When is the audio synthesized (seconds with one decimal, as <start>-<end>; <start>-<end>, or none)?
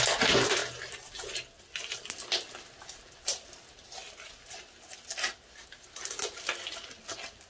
none